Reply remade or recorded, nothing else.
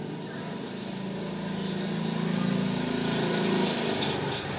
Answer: recorded